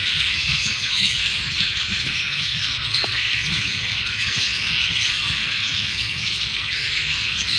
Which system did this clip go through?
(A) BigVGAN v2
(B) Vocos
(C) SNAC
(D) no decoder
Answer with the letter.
C